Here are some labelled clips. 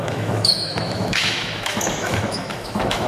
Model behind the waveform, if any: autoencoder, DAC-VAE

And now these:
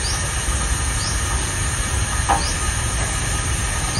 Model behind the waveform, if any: none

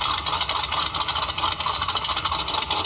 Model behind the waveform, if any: none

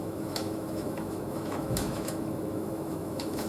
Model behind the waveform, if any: autoencoder, DAC-VAE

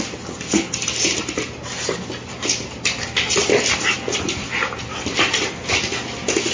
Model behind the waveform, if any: none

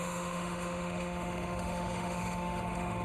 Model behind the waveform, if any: autoencoder, DAC-VAE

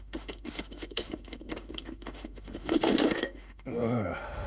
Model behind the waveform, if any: autoencoder, DAC-VAE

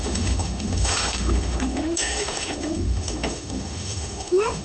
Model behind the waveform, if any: autoencoder, DAC-VAE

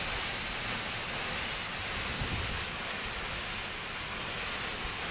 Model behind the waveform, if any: none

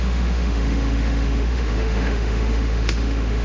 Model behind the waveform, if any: autoencoder, DAC-VAE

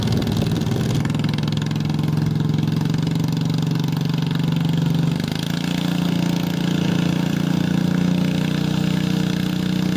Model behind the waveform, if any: none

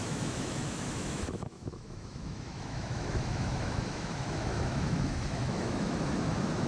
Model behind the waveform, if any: autoencoder, DAC-VAE